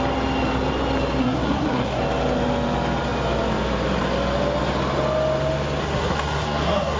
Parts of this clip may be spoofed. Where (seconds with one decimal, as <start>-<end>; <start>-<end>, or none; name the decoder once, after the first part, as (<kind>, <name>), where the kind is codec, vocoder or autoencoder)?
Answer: 1.2-2.0 (codec, SNAC); 5.8-7.0